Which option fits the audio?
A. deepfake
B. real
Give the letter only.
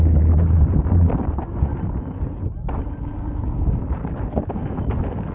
B